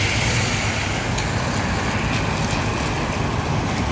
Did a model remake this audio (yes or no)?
no